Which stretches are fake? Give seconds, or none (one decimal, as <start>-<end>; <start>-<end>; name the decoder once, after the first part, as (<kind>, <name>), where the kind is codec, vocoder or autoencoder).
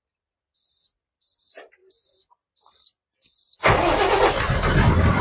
none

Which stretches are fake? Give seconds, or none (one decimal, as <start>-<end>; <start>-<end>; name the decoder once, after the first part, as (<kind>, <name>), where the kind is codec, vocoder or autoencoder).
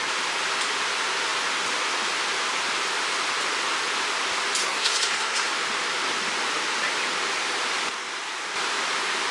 4.6-5.5 (codec, SNAC)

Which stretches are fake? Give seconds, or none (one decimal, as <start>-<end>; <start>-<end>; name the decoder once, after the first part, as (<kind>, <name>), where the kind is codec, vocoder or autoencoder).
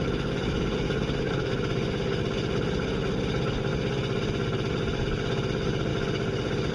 none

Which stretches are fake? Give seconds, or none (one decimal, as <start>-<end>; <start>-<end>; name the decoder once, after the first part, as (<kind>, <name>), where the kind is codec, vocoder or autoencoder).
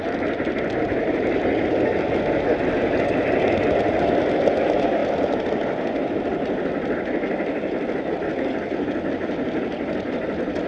none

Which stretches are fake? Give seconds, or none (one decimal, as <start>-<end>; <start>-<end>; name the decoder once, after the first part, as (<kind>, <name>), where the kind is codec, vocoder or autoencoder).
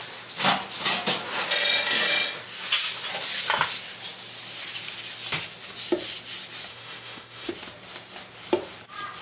6.7-7.5 (autoencoder, DAC-VAE)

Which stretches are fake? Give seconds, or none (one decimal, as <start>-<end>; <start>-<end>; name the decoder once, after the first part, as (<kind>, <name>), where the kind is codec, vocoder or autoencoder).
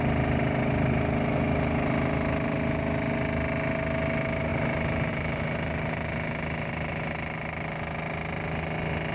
none